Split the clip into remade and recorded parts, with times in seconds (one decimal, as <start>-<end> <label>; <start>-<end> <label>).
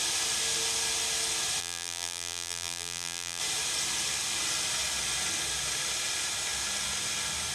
0.0-1.6 recorded; 1.6-3.4 remade; 3.4-7.5 recorded